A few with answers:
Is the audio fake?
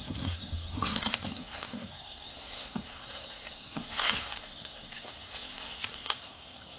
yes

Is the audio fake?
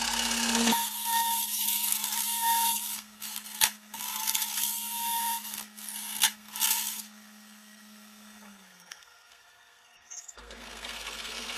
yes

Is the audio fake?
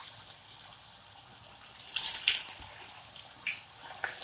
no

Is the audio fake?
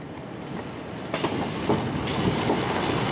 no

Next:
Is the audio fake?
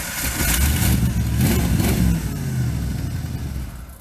no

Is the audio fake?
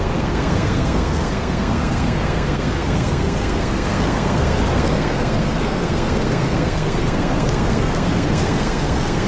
yes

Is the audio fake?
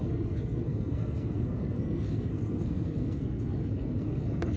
yes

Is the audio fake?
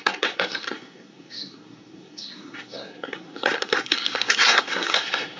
yes